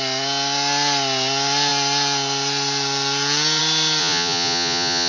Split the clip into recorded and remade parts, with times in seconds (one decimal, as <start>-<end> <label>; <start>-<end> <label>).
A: 0.0-4.0 recorded; 4.0-5.1 remade